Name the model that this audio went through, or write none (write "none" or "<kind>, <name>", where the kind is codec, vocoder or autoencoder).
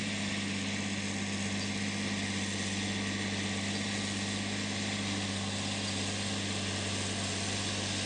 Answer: none